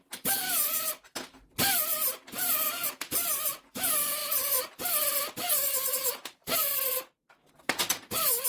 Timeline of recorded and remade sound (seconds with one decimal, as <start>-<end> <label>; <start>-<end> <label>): 0.0-8.5 recorded